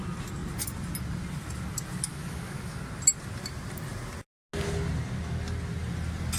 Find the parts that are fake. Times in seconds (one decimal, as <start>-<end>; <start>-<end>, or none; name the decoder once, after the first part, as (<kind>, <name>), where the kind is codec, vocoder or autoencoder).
2.1-2.8 (autoencoder, DAC-VAE)